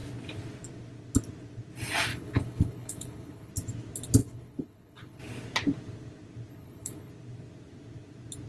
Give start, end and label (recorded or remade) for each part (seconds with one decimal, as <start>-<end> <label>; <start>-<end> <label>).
0.0-2.1 recorded; 2.1-3.5 remade; 3.5-4.2 recorded; 4.2-5.2 remade; 5.2-6.5 recorded; 6.5-7.1 remade; 7.1-8.5 recorded